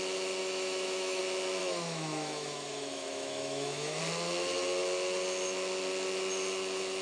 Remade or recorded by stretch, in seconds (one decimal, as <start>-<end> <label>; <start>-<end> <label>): 0.0-0.4 recorded; 0.4-1.2 remade; 1.2-1.6 recorded; 1.6-4.0 remade; 4.0-7.0 recorded